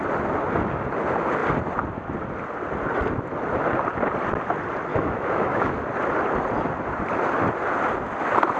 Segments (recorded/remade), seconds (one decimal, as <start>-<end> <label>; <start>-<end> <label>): 0.0-4.9 recorded; 4.9-5.7 remade; 5.7-8.6 recorded